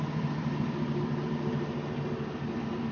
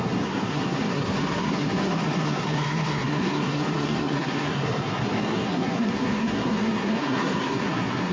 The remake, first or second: second